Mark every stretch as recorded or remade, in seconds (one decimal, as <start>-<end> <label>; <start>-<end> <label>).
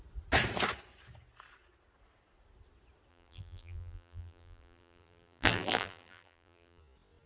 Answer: 0.0-3.1 recorded; 3.1-6.8 remade; 6.8-7.3 recorded